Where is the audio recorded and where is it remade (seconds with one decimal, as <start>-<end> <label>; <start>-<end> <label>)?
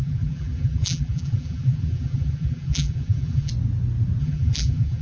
0.0-3.5 remade; 3.5-4.2 recorded; 4.2-5.0 remade